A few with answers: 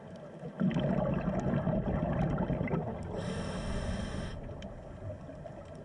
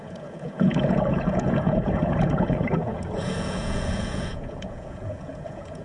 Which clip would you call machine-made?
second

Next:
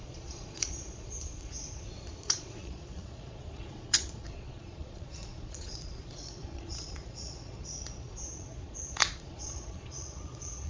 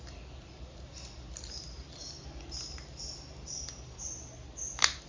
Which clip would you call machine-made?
first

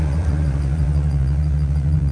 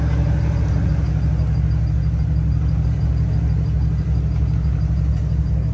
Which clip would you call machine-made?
first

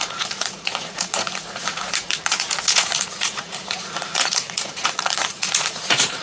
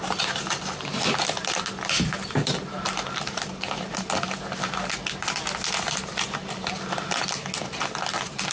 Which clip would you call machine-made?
first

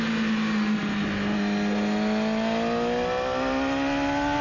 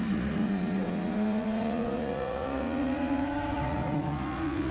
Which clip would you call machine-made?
second